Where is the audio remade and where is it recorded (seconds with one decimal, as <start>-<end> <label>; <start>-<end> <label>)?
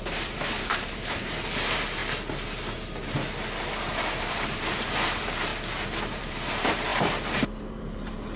0.0-2.0 remade; 2.0-3.9 recorded; 3.9-5.5 remade; 5.5-6.0 recorded; 6.0-8.4 remade